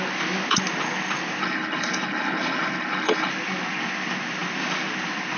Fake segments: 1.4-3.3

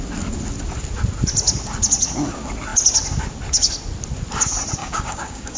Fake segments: 4.8-5.6